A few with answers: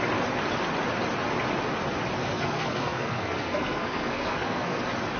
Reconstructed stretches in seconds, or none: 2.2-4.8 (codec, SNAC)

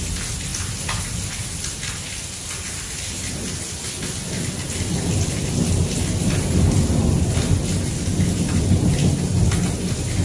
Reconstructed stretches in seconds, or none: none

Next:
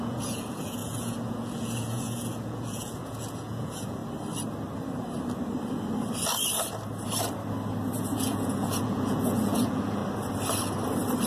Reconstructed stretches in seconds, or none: 0.0-4.0 (vocoder, Vocos); 8.0-10.0

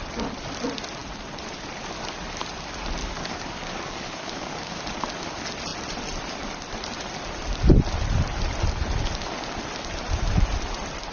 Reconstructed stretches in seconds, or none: 3.0-4.8 (codec, DAC)

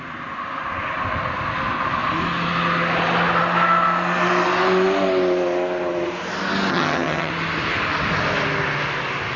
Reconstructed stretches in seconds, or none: 6.7-7.3 (vocoder, HiFi-GAN)